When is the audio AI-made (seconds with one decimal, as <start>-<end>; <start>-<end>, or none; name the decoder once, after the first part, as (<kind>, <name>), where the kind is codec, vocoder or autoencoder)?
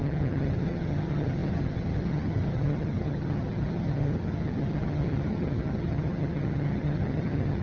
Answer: 0.0-7.6 (vocoder, HiFi-GAN)